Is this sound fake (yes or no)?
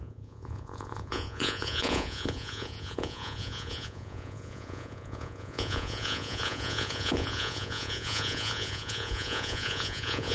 yes